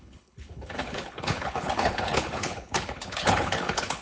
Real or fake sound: fake